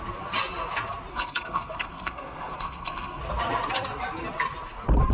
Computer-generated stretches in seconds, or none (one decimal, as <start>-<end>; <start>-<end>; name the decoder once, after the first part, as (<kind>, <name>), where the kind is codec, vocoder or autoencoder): 1.1-3.2 (codec, SNAC)